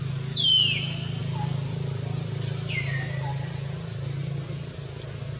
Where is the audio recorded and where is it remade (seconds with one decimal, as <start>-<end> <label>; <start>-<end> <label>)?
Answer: 0.0-5.4 recorded

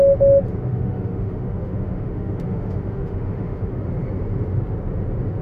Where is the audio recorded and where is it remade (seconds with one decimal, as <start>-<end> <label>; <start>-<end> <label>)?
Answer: 0.0-0.7 recorded; 0.7-3.8 remade; 3.8-5.4 recorded

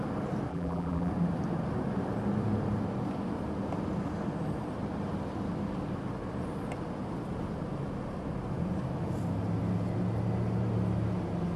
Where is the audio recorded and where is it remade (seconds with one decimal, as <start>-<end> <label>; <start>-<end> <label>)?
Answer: 0.0-0.5 recorded; 0.5-1.1 remade; 1.1-11.6 recorded

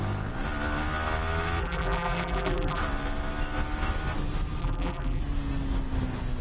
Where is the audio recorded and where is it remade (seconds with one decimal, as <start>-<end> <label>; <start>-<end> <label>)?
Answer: 0.0-1.6 recorded; 1.6-2.8 remade; 2.8-4.6 recorded; 4.6-5.2 remade; 5.2-6.4 recorded

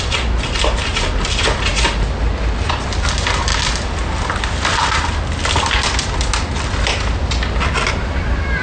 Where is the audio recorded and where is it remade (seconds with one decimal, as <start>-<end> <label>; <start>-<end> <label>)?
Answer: 0.0-8.6 recorded

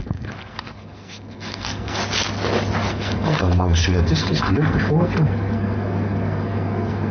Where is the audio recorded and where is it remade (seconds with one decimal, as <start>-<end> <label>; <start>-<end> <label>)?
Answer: 0.0-2.0 remade; 2.0-2.9 recorded; 2.9-7.1 remade

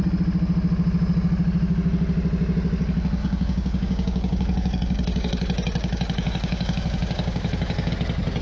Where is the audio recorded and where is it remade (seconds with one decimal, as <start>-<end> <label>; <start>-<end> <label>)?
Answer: 0.0-3.2 recorded; 3.2-7.9 remade; 7.9-8.4 recorded

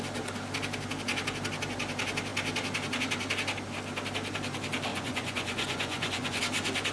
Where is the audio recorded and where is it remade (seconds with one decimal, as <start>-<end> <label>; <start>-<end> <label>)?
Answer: 0.0-4.9 recorded; 4.9-6.4 remade; 6.4-6.9 recorded